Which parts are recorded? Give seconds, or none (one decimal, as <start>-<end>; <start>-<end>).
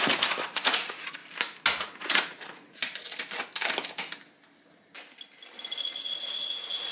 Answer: 1.2-1.8; 2.8-6.0